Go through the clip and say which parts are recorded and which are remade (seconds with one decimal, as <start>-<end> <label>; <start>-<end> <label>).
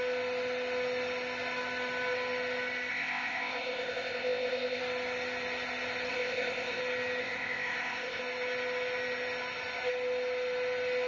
0.0-2.9 recorded; 2.9-4.8 remade; 4.8-6.1 recorded; 6.1-6.8 remade; 6.8-7.2 recorded; 7.2-8.2 remade; 8.2-11.1 recorded